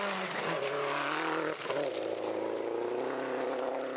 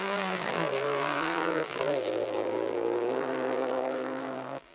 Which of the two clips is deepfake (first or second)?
second